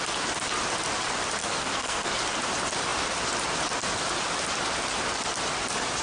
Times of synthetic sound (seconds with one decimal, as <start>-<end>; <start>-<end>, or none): 1.4-2.1

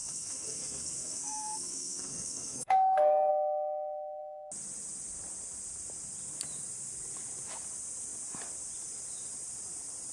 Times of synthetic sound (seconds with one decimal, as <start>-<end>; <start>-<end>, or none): 0.0-3.3

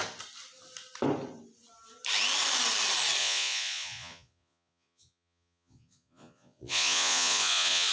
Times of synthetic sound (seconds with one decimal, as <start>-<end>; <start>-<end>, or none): 3.2-7.9

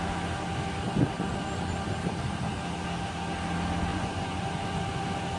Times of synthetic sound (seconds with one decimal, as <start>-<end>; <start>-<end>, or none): 3.9-4.8

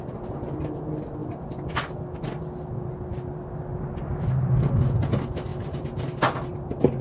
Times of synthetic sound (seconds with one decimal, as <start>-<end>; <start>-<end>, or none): none

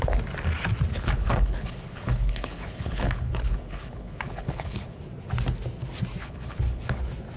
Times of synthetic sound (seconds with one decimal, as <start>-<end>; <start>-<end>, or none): 0.9-5.0; 6.2-7.0

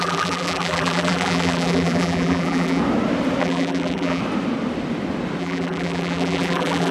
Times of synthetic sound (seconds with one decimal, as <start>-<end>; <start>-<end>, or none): 0.0-2.8; 3.4-4.2; 5.4-6.9